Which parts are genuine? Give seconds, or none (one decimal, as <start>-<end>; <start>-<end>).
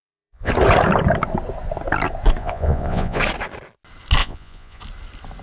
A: 0.5-2.4; 3.2-4.2; 4.8-5.4